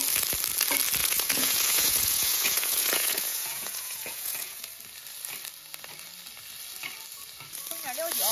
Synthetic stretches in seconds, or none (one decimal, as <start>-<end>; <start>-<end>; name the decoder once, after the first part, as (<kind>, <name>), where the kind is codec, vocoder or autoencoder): 1.0-4.7 (vocoder, Vocos)